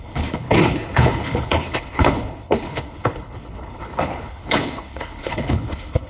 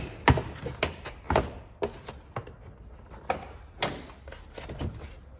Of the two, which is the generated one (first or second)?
first